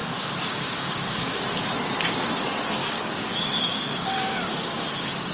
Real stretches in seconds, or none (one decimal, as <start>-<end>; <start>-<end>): 1.4-2.8